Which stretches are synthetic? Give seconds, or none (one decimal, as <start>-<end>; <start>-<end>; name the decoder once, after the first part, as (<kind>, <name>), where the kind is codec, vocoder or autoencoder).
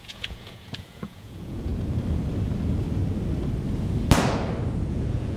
0.0-1.7 (vocoder, Vocos); 4.9-5.4